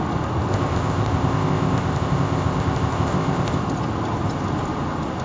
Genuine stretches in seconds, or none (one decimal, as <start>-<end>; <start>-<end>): 0.0-0.5; 3.6-5.2